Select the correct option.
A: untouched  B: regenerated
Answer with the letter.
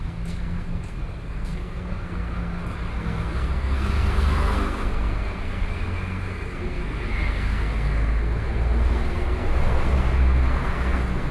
B